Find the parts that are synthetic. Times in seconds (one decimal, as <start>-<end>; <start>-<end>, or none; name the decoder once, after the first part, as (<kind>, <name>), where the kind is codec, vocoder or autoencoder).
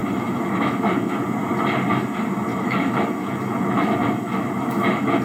0.0-1.1 (autoencoder, DAC-VAE); 2.5-5.2